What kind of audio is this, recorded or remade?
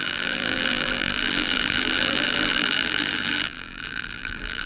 remade